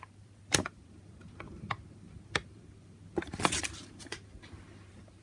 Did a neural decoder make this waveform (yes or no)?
yes